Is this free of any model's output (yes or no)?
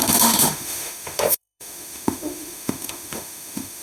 no